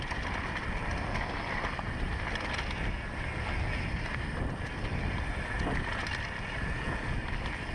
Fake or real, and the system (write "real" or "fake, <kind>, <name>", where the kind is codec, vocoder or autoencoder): real